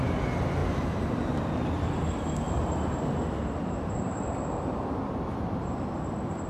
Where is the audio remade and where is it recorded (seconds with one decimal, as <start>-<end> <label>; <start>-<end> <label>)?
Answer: 0.0-6.5 remade